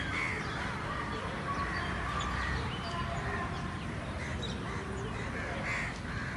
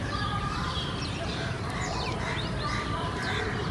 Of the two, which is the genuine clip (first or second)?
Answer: first